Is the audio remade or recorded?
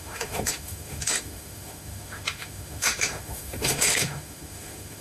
remade